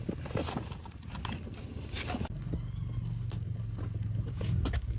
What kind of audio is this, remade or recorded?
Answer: recorded